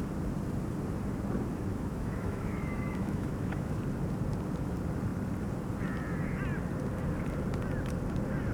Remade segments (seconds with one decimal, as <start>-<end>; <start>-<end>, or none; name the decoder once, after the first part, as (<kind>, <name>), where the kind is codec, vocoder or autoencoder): 1.7-3.8 (autoencoder, DAC-VAE)